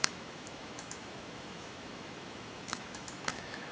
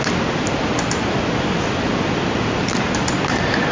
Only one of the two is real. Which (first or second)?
second